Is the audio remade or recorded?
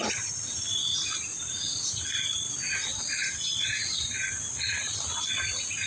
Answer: recorded